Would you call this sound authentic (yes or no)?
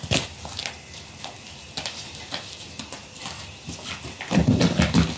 yes